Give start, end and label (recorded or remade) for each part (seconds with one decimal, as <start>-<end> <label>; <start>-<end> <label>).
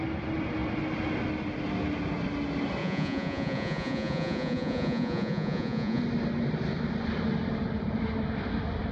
0.0-2.8 recorded; 2.8-6.0 remade; 6.0-8.9 recorded